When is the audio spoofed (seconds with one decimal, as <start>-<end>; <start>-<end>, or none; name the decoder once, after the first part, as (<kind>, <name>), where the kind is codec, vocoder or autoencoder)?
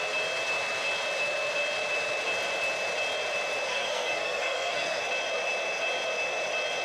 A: 3.7-5.0 (codec, SNAC)